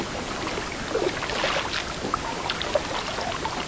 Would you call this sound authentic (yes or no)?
yes